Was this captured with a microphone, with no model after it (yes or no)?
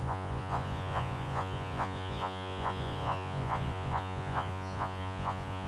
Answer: no